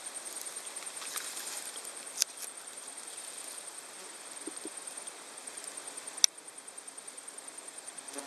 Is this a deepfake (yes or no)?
no